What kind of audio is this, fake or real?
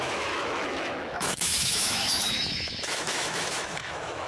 fake